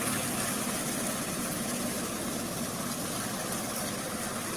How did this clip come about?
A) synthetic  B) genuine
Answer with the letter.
B